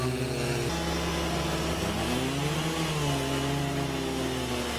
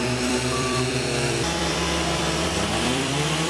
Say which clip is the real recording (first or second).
first